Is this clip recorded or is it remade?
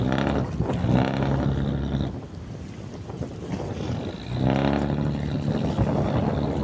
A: recorded